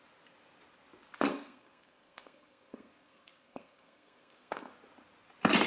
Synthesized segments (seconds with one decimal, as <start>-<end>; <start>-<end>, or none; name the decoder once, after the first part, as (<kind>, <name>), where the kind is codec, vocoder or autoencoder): 1.3-4.7 (codec, SNAC)